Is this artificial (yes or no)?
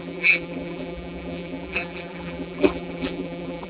yes